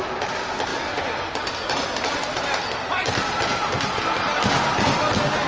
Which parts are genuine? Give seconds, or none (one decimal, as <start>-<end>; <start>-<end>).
0.0-5.5